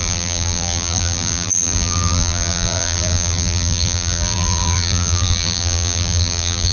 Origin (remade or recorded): remade